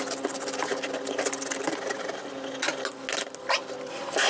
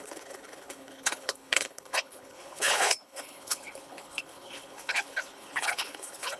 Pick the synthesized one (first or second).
second